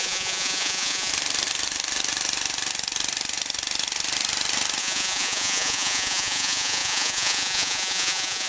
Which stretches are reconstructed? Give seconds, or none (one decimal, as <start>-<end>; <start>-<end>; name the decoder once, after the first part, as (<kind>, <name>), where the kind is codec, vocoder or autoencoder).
0.0-1.1 (vocoder, Vocos); 4.8-8.5